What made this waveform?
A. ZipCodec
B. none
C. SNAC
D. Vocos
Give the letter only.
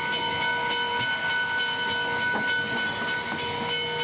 B